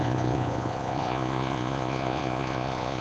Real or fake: fake